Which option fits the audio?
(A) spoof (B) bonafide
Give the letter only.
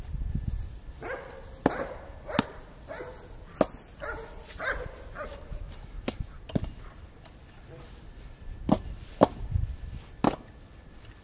B